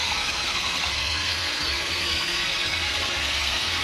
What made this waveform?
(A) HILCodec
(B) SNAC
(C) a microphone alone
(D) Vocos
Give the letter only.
B